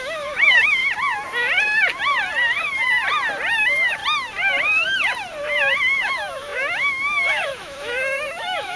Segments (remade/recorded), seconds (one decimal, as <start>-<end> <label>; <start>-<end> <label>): 0.0-0.8 remade; 0.8-3.5 recorded; 3.5-4.0 remade; 4.0-6.0 recorded; 6.0-8.8 remade